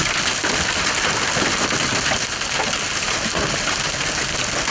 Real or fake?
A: real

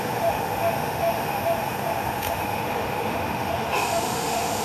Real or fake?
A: fake